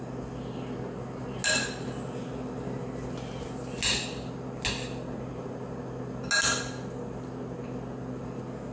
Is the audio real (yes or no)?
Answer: yes